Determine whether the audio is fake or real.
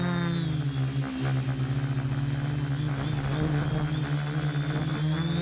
real